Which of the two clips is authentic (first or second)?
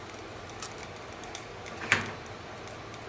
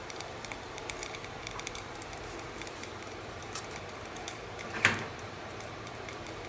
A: first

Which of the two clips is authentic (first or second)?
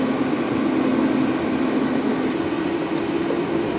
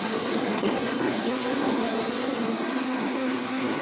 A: first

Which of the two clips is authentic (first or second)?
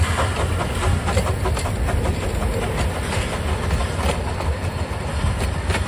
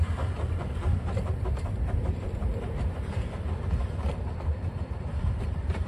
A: first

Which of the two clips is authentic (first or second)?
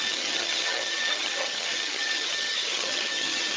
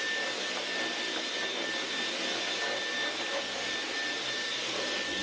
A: second